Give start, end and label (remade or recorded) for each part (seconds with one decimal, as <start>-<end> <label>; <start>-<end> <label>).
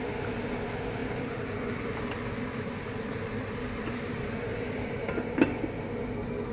0.0-1.0 recorded; 1.0-3.2 remade; 3.2-4.5 recorded; 4.5-5.4 remade; 5.4-6.5 recorded